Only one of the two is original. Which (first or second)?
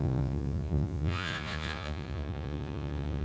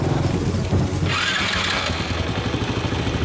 second